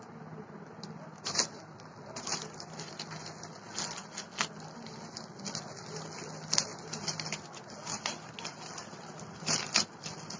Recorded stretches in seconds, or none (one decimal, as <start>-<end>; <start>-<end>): 0.0-10.4